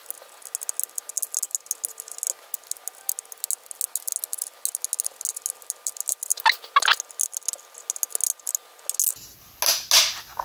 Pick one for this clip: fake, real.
real